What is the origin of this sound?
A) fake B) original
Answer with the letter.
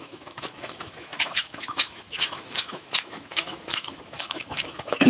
A